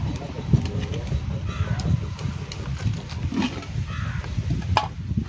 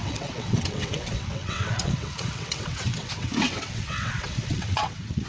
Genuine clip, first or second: first